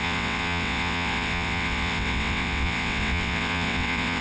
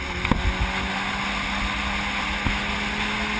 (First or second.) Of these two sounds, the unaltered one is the second